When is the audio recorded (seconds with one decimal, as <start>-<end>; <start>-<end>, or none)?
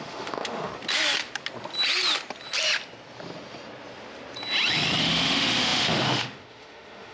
0.7-5.0